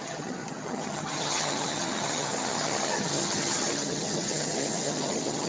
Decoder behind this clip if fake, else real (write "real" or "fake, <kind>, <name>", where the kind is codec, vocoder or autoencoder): fake, vocoder, HiFi-GAN